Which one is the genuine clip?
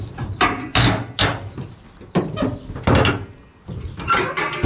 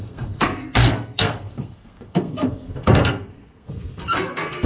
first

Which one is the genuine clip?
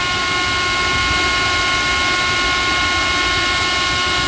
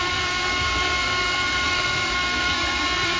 first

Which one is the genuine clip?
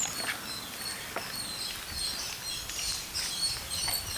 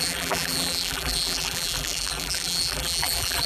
first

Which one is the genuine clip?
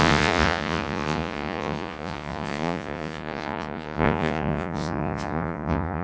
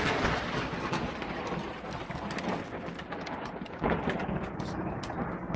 second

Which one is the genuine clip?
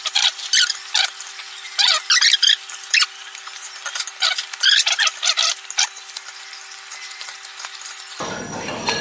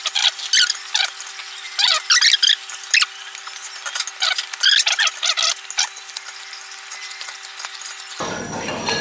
second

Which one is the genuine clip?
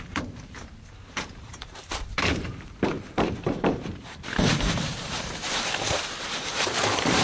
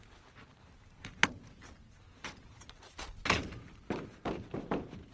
second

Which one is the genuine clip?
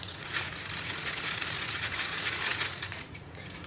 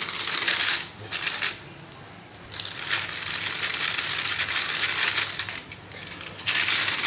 second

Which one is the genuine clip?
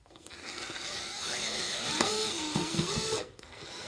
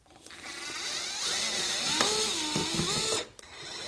second